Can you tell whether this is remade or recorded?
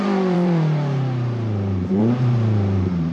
remade